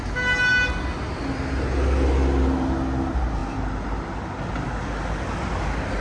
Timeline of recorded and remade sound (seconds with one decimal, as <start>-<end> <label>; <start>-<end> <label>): 0.0-6.0 recorded